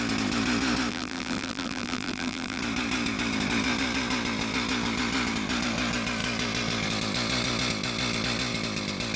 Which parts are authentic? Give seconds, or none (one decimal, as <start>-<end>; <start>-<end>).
0.0-0.9; 2.6-9.2